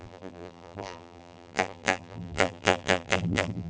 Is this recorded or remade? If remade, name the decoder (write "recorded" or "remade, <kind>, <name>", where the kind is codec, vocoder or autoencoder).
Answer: remade, vocoder, BigVGAN v2